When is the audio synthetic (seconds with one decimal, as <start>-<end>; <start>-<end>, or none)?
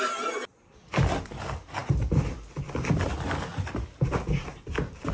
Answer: none